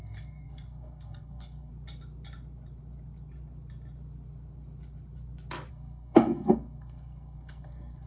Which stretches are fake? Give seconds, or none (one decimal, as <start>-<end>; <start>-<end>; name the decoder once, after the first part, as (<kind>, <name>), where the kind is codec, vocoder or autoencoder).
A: 0.0-1.7 (codec, SNAC); 5.7-8.1